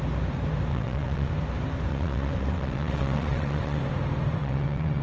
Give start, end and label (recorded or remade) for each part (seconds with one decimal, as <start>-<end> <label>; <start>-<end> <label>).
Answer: 0.0-0.7 recorded; 0.7-1.3 remade; 1.3-1.9 recorded; 1.9-3.8 remade; 3.8-4.4 recorded; 4.4-5.0 remade